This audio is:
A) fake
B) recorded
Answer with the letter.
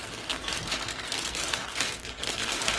A